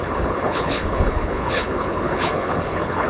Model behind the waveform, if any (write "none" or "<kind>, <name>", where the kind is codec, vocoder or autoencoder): codec, HILCodec